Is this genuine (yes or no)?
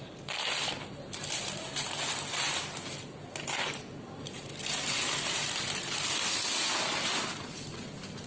yes